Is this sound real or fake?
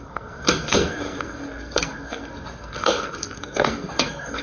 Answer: fake